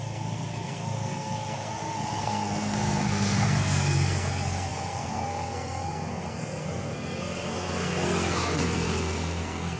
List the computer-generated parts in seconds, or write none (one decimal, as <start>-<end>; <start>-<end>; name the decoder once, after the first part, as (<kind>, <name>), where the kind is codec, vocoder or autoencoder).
0.0-9.8 (codec, SNAC)